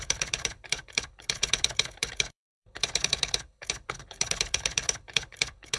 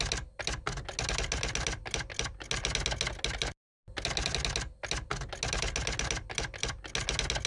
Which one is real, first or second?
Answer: second